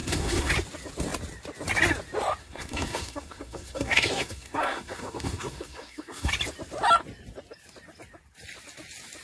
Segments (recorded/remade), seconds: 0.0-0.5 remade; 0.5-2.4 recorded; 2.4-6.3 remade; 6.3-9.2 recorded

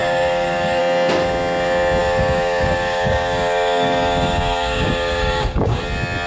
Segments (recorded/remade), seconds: 0.0-0.8 remade; 0.8-2.0 recorded; 2.0-5.8 remade; 5.8-6.3 recorded

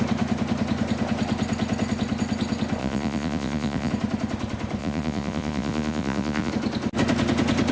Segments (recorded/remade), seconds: 0.0-2.8 recorded; 2.8-3.9 remade; 3.9-4.8 recorded; 4.8-6.5 remade; 6.5-7.7 recorded

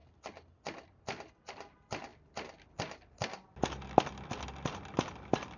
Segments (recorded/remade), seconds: 0.0-5.6 recorded